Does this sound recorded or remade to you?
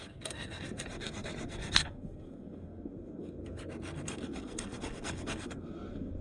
remade